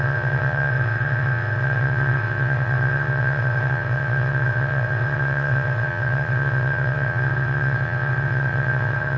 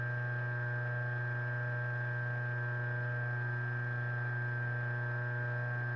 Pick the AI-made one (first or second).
first